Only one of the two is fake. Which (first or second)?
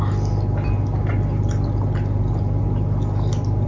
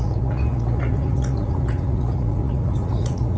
second